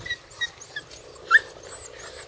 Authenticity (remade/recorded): recorded